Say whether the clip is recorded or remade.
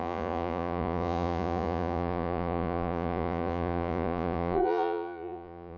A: remade